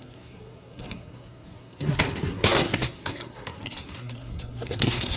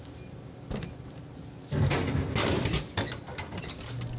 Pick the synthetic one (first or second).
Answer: first